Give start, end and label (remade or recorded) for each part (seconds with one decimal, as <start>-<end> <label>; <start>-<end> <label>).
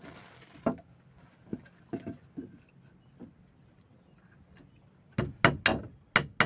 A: 0.0-6.5 recorded